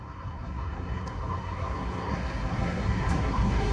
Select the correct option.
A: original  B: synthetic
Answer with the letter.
B